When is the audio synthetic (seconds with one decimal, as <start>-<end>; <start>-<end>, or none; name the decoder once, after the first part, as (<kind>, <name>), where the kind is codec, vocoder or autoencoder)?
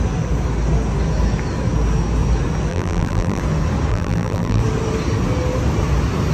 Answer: 2.7-3.4 (vocoder, BigVGAN v2); 3.9-4.6